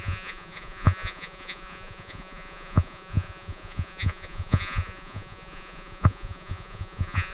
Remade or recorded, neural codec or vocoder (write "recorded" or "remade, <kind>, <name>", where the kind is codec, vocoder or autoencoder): remade, vocoder, Vocos